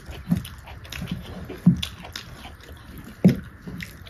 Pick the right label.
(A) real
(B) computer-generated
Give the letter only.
A